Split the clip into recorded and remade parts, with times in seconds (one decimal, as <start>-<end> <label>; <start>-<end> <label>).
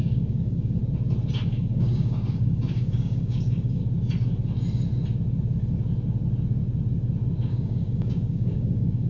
0.0-0.8 remade; 0.8-1.5 recorded; 1.5-3.8 remade; 3.8-7.5 recorded; 7.5-9.1 remade